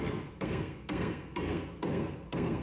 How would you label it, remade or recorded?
remade